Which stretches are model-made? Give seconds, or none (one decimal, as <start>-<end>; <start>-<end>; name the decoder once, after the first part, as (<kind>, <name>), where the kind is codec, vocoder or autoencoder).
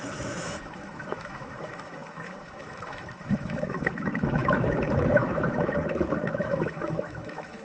0.0-7.6 (autoencoder, DAC-VAE)